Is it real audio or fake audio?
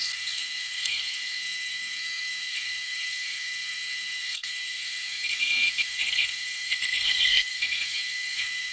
fake